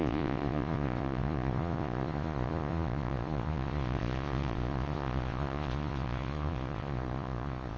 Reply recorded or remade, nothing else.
remade